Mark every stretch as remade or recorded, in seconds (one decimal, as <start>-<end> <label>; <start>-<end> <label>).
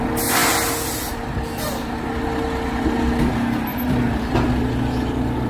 0.0-3.7 recorded; 3.7-4.6 remade; 4.6-5.5 recorded